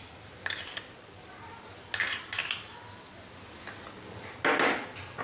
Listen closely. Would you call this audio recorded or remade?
recorded